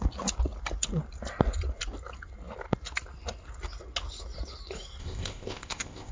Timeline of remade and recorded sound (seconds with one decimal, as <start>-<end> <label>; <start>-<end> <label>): 0.0-5.0 recorded; 5.0-6.1 remade